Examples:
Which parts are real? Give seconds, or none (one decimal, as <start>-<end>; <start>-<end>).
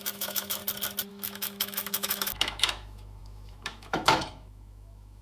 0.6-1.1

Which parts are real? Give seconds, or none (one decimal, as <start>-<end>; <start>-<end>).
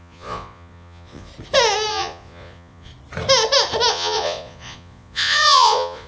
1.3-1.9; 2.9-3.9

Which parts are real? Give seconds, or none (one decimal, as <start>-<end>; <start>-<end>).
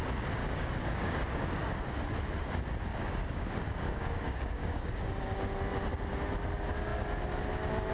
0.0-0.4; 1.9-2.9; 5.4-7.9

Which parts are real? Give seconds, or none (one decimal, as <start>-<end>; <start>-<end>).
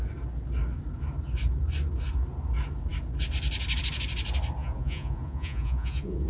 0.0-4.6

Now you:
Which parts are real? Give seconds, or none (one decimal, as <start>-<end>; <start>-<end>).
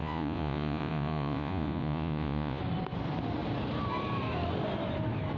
2.6-5.4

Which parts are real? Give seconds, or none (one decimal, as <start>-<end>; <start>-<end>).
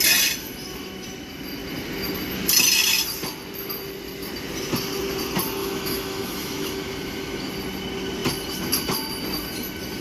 0.0-5.6; 7.5-10.0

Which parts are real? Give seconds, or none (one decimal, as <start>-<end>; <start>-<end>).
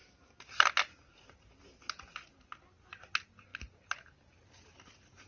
0.0-5.3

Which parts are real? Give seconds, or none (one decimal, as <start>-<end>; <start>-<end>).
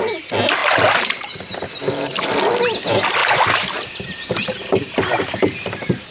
0.0-6.1